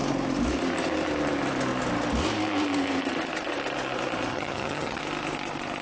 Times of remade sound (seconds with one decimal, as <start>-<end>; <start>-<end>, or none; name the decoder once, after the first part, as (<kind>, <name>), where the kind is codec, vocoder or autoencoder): 4.3-5.0 (vocoder, HiFi-GAN)